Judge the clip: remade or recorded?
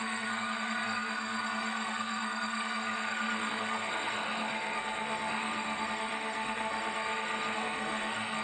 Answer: remade